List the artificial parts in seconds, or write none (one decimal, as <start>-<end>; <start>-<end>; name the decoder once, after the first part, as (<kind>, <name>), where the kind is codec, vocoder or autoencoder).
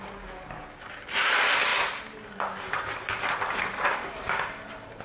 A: none